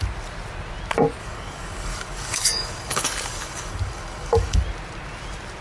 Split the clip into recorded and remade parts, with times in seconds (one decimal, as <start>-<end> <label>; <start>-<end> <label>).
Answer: 0.0-1.2 recorded; 1.2-4.6 remade; 4.6-5.6 recorded